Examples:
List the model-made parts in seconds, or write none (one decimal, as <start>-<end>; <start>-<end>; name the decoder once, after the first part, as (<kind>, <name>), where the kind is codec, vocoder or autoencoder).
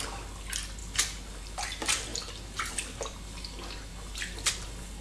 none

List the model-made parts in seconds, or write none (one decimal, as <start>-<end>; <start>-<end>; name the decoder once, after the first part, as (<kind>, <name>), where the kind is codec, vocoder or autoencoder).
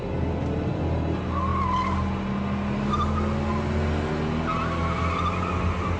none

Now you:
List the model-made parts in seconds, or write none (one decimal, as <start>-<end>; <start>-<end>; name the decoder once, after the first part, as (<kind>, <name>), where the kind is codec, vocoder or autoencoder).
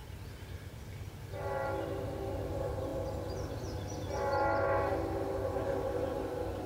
none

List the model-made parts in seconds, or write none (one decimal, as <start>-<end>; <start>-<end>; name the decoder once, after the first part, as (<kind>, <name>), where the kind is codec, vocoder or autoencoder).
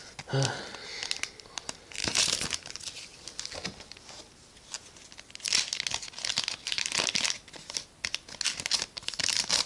2.0-2.9 (vocoder, BigVGAN v2)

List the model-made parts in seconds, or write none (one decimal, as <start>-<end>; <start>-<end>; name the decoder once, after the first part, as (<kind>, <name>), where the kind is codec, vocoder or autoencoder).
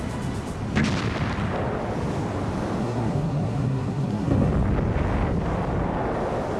2.8-4.5 (codec, SNAC)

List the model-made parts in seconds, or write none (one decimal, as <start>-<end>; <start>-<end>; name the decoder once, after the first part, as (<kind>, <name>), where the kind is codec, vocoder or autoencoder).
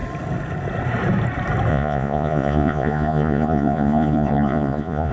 1.7-5.1 (vocoder, Vocos)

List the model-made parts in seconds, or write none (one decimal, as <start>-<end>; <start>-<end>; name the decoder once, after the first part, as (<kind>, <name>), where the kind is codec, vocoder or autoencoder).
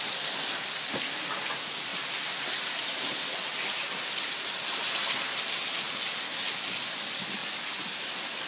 1.9-5.5 (vocoder, BigVGAN v2)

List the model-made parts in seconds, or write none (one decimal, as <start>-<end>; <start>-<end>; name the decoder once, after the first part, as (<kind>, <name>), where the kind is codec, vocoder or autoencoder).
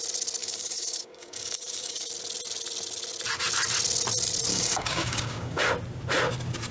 0.4-2.1 (codec, DAC); 4.5-5.6